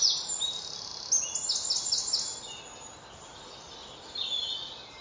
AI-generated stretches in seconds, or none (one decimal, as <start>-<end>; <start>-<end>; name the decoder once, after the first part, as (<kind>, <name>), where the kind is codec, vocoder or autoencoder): none